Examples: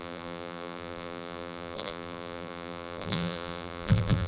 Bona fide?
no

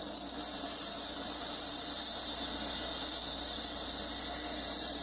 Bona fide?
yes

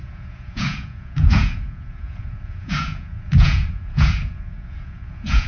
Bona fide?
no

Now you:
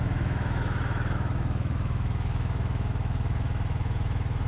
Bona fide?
no